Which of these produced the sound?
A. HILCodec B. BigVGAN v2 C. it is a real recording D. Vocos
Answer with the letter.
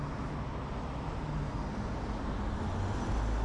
C